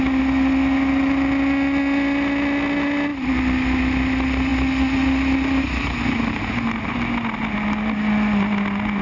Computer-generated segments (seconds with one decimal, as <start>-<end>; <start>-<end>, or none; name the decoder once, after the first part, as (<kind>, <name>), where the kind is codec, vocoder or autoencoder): none